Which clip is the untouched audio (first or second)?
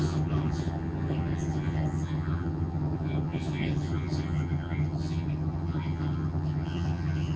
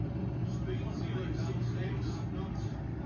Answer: second